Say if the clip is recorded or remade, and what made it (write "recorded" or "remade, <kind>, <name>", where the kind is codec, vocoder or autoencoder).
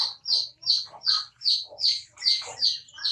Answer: remade, vocoder, BigVGAN v2